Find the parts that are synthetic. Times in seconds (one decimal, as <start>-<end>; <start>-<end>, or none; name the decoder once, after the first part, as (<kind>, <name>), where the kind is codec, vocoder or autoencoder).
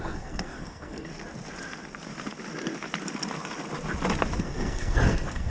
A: 0.0-1.1 (codec, SNAC); 4.4-5.5